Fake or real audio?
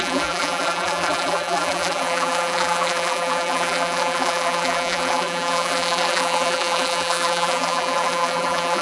fake